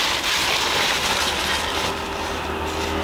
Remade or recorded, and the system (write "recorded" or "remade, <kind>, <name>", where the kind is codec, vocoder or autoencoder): recorded